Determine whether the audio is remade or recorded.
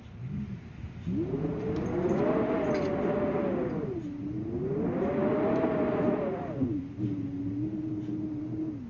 recorded